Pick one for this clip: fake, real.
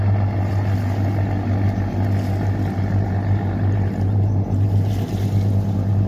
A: real